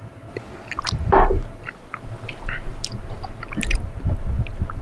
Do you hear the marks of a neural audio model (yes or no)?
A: no